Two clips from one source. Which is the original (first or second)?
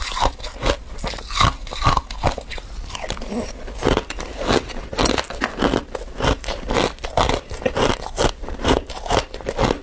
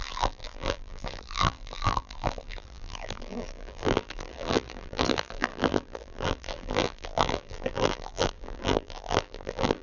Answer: first